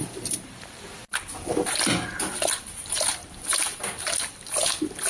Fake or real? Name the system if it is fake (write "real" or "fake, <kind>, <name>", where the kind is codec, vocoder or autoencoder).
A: real